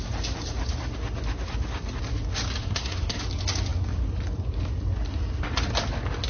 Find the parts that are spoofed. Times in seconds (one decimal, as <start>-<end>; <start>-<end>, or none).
2.6-3.2